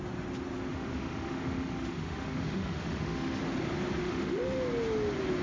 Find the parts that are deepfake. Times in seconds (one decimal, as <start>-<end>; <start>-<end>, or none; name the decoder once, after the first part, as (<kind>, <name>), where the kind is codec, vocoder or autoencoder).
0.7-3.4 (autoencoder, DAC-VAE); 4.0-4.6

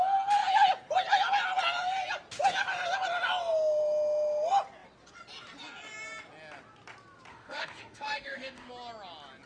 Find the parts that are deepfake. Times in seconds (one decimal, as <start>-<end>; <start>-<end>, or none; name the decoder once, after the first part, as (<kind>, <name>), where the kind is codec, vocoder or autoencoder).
7.3-8.7 (autoencoder, DAC-VAE)

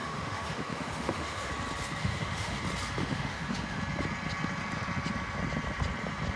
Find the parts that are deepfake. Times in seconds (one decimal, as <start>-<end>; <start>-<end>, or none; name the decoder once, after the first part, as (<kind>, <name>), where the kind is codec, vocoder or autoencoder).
0.0-1.5 (autoencoder, DAC-VAE); 2.0-2.6; 3.0-3.8

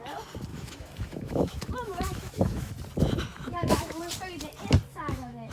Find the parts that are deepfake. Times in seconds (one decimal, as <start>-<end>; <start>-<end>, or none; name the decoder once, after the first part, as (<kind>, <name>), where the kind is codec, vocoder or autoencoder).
0.5-2.7 (autoencoder, DAC-VAE); 3.3-4.0; 4.9-5.5